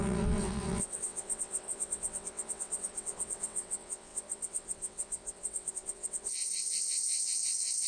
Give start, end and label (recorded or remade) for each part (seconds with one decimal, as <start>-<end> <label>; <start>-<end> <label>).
0.0-7.9 remade